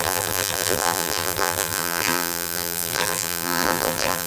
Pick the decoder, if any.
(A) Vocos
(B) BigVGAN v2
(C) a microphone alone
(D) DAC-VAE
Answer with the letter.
B